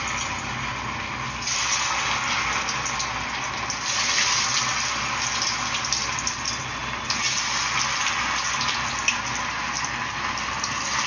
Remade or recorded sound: recorded